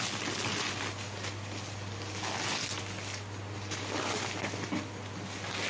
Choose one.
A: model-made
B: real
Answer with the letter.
B